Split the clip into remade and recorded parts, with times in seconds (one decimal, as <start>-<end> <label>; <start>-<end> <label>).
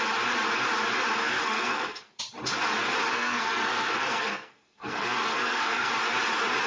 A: 0.0-1.2 recorded; 1.2-2.2 remade; 2.2-3.1 recorded; 3.1-5.9 remade; 5.9-6.7 recorded